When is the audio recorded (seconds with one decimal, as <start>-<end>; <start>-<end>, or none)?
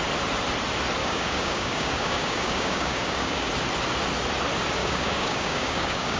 0.0-1.0; 3.5-4.8